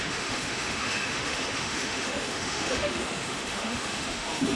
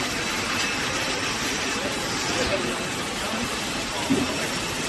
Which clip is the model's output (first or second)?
first